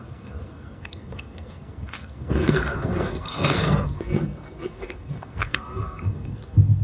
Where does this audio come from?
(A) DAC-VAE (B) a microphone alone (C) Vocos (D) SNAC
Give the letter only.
D